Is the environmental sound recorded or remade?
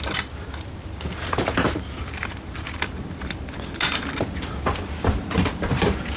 recorded